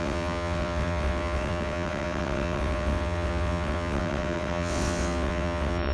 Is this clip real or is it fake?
fake